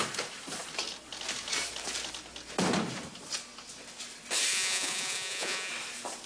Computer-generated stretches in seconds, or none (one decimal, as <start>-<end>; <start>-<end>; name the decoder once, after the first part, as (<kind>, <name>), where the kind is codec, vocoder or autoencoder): 4.5-5.7 (vocoder, Vocos)